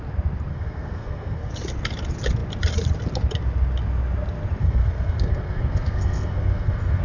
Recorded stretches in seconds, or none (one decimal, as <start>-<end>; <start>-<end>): 0.0-0.5; 1.5-4.6